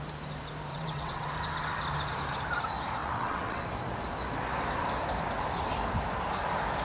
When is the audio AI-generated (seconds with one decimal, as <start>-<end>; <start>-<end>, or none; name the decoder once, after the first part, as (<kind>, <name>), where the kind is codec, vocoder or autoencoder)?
0.7-1.3 (vocoder, WaveNeXt); 3.0-3.6